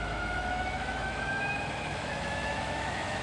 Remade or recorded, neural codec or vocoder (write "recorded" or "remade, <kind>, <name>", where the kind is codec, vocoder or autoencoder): remade, autoencoder, DAC-VAE